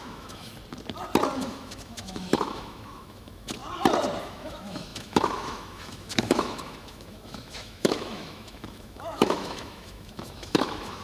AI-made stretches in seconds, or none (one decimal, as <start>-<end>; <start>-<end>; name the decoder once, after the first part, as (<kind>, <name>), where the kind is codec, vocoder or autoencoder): 0.0-0.5 (autoencoder, DAC-VAE); 1.4-3.6; 4.2-11.0